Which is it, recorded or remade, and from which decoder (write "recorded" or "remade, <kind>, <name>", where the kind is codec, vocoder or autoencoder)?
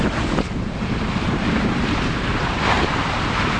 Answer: remade, vocoder, BigVGAN v2